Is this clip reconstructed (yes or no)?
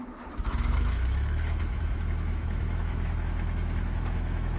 yes